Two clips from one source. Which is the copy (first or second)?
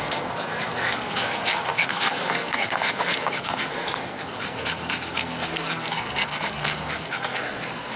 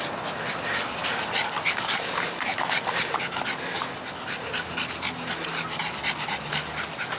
first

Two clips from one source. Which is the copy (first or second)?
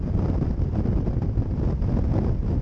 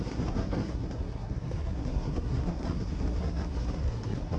second